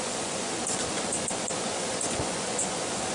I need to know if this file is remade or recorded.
remade